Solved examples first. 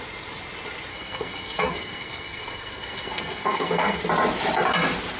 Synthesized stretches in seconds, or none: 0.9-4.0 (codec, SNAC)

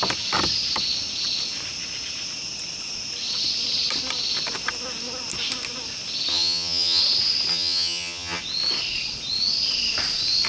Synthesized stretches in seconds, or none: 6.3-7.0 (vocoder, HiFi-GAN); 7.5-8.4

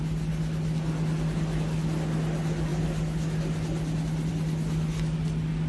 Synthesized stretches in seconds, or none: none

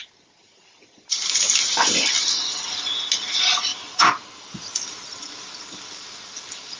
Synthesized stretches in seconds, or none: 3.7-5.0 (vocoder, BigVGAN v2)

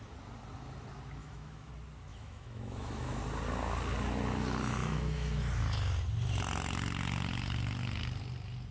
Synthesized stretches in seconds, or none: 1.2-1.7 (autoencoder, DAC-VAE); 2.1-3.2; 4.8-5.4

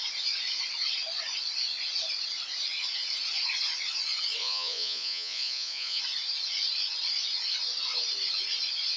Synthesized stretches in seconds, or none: 4.4-6.0 (vocoder, Vocos)